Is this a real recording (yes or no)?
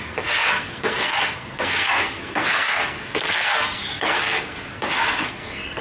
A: no